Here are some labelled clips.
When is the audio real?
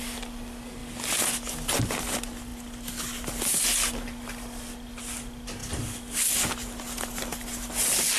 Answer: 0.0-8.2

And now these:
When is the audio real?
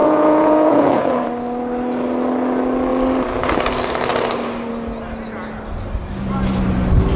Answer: 1.2-7.2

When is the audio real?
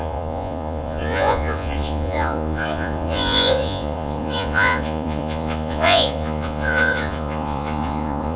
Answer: none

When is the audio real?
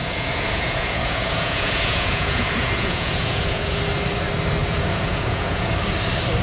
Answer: 3.8-4.6; 5.7-6.4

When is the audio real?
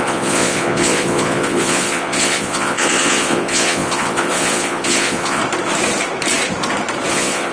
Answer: 5.4-7.1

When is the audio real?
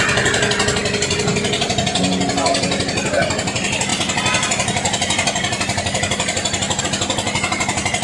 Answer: 0.0-8.0